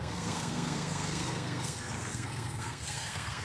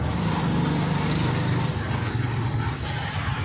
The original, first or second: second